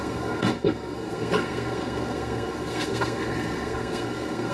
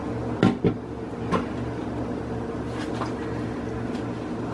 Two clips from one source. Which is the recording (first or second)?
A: second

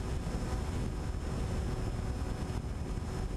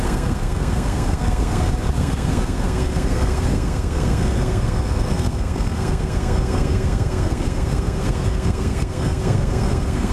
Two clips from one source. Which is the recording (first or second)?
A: first